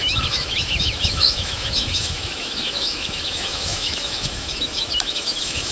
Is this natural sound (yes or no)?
no